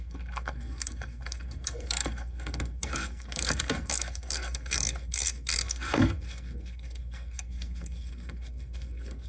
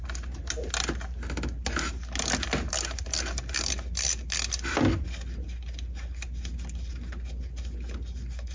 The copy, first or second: first